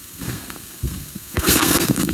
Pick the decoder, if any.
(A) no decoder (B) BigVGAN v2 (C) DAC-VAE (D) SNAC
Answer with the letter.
D